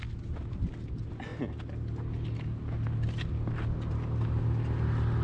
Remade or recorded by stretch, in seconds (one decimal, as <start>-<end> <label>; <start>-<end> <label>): 0.0-5.2 recorded